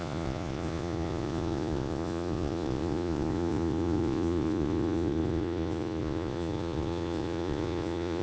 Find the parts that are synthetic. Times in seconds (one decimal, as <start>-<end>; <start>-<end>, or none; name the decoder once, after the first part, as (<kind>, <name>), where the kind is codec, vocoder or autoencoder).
0.0-8.2 (vocoder, Vocos)